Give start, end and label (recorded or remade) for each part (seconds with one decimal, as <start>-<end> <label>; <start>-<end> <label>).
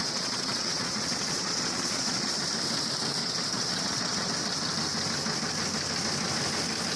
0.0-2.3 remade; 2.3-3.2 recorded; 3.2-4.3 remade; 4.3-7.0 recorded